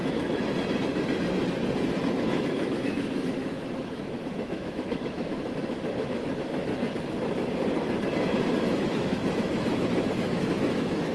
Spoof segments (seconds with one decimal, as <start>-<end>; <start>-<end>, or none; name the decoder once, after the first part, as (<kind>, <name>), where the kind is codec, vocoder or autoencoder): 2.1-6.7 (autoencoder, DAC-VAE); 8.6-11.1